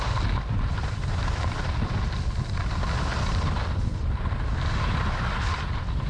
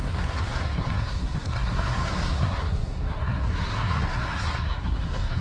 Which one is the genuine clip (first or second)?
first